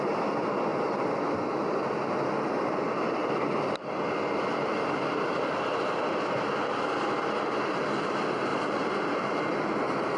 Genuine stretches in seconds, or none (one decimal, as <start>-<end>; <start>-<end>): 0.0-8.5; 9.4-10.2